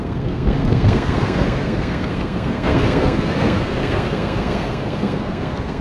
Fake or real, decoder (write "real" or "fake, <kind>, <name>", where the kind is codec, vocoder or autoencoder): fake, codec, SNAC